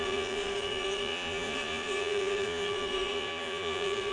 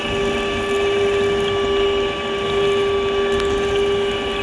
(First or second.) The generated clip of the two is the first